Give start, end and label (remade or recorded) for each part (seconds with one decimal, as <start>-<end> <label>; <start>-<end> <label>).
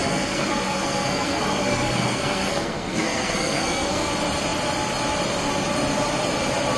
0.0-4.1 remade; 4.1-6.8 recorded